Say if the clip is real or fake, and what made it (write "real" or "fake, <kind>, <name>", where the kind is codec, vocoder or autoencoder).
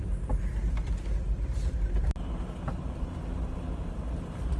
real